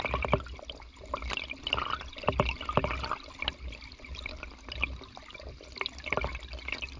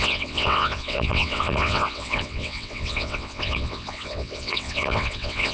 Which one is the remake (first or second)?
second